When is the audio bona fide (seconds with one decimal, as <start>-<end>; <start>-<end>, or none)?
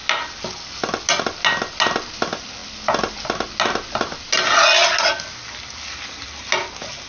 0.0-7.1